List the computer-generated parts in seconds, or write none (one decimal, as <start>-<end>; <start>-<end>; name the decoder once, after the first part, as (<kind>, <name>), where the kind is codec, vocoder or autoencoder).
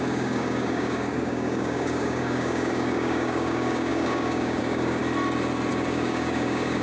0.0-5.0 (codec, DAC); 5.7-6.8